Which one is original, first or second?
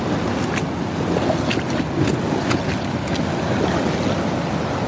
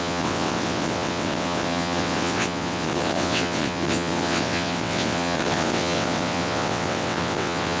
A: first